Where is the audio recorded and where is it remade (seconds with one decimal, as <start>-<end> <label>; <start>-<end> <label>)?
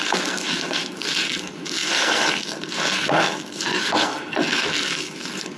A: 0.0-5.6 remade